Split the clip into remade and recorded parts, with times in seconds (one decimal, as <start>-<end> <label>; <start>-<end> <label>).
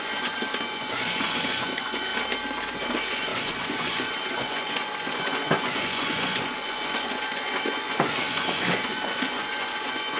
0.0-2.1 remade; 2.1-2.7 recorded; 2.7-10.2 remade